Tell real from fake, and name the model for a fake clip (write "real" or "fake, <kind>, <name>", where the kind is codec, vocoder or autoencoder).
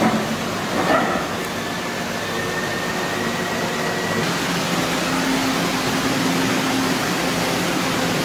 real